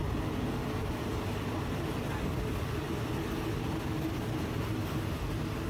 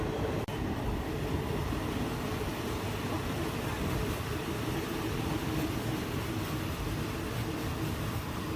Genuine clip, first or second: first